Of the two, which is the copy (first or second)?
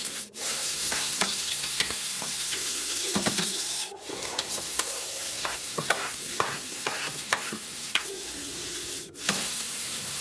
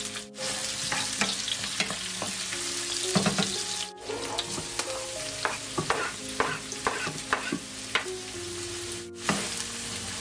first